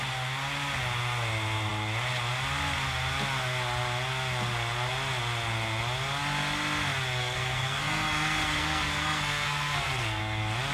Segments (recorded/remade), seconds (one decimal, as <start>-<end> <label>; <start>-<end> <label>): 0.0-7.2 recorded; 7.2-10.2 remade; 10.2-10.7 recorded